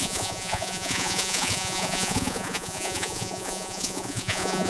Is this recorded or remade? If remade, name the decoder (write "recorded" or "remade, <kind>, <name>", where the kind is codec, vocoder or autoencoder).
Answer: remade, vocoder, Vocos